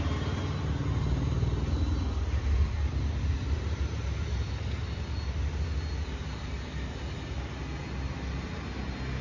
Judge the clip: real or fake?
real